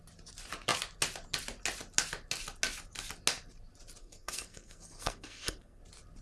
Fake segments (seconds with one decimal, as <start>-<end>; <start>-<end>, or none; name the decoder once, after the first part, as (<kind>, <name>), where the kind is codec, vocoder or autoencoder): 4.0-5.8 (codec, SNAC)